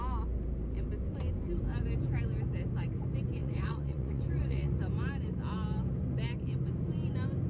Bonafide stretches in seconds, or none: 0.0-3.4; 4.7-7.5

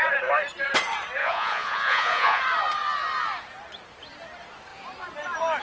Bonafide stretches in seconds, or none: 0.0-1.2; 2.4-5.6

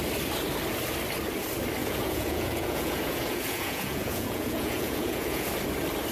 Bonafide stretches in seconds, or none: 0.0-1.8; 5.5-6.1

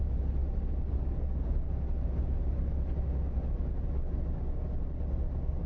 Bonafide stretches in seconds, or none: 0.0-5.7

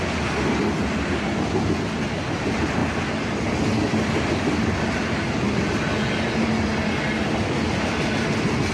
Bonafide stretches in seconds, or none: 0.0-8.7